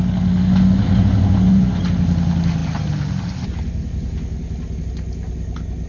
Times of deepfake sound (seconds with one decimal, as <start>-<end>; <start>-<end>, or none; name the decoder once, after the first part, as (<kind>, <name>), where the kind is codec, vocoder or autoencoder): 0.8-1.8 (vocoder, Vocos)